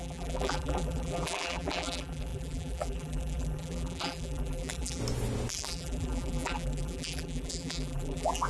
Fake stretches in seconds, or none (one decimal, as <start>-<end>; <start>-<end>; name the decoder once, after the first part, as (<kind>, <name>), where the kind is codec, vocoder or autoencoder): 0.0-5.0 (vocoder, BigVGAN v2); 5.5-8.5